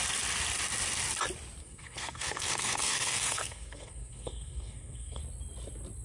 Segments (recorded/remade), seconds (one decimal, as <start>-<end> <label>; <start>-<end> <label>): 0.0-1.6 recorded; 1.6-5.2 remade; 5.2-6.0 recorded